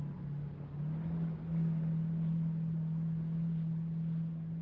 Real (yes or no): yes